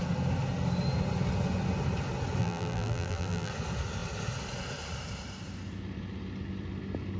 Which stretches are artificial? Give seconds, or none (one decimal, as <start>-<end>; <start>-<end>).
2.4-3.5